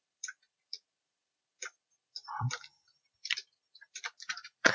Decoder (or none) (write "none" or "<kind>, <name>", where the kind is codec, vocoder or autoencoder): vocoder, BigVGAN v2